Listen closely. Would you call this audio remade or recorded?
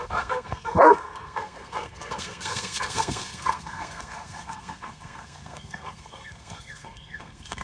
remade